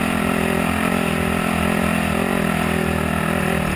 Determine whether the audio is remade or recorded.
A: recorded